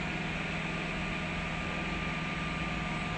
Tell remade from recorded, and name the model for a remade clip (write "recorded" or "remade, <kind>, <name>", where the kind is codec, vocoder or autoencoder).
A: recorded